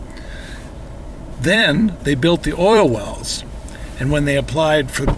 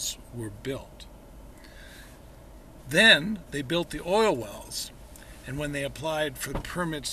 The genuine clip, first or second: second